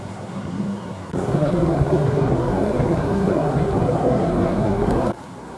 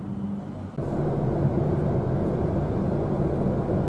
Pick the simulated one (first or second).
first